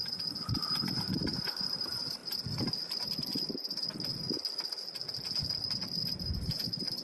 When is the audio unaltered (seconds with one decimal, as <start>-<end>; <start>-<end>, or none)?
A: 2.2-6.1